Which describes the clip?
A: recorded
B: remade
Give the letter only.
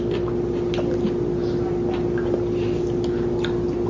A